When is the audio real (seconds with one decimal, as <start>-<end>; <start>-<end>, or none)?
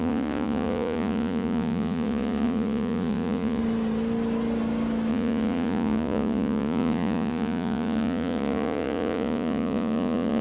3.6-5.1